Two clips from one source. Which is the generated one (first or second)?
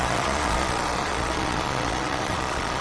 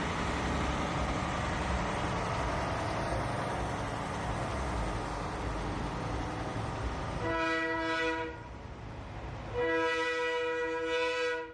first